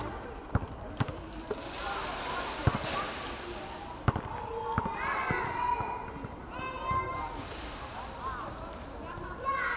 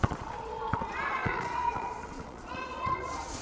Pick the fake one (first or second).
second